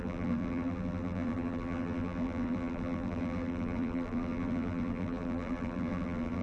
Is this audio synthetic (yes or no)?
yes